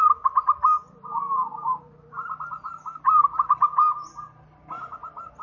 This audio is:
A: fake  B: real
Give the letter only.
B